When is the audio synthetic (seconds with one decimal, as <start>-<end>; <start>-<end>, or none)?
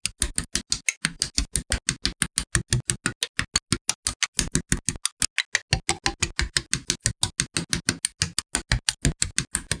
none